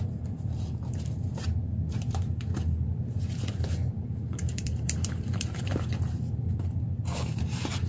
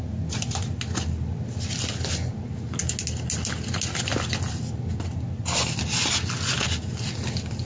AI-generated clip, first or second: first